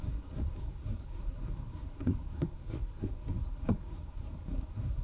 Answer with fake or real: fake